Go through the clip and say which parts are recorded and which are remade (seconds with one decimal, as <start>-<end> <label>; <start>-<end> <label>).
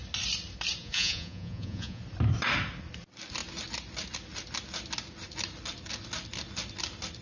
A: 0.0-0.8 recorded; 0.8-2.0 remade; 2.0-7.2 recorded